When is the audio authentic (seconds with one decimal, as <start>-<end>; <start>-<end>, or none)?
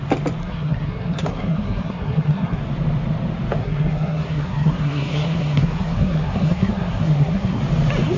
0.0-0.4; 2.6-3.6; 7.6-8.2